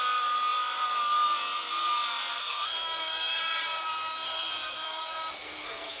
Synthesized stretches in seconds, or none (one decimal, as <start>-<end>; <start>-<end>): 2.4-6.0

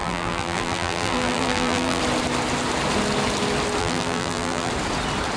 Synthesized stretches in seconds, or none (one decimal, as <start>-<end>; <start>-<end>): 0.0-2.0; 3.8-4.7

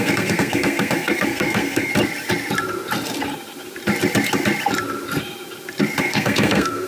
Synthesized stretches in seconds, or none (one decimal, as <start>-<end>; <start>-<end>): 0.0-1.9; 6.0-6.9

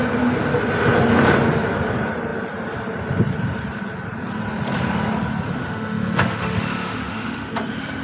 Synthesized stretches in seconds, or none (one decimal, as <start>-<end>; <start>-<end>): 5.6-7.5

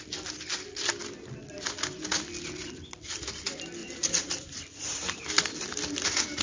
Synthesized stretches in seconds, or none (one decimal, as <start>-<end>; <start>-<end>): 3.8-5.4

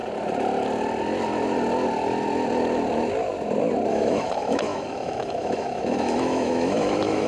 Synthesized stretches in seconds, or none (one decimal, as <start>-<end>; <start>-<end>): 3.9-7.3